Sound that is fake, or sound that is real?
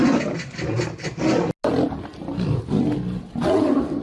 real